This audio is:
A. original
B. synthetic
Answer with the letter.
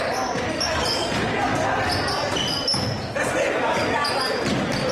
A